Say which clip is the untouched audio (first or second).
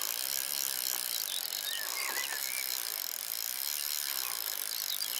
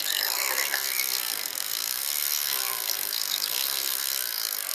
first